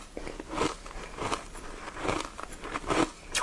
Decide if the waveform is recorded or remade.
recorded